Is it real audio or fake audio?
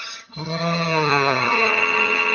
fake